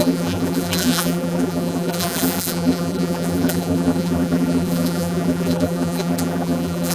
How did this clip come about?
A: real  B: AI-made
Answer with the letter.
B